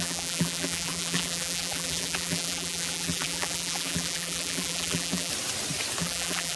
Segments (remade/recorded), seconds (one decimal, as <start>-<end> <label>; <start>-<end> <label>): 0.0-5.3 remade; 5.3-6.0 recorded; 6.0-6.6 remade